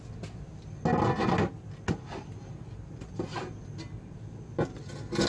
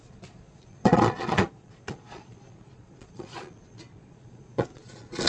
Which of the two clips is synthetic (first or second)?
second